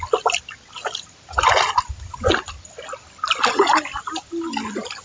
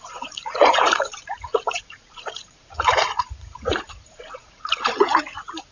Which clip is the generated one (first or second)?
second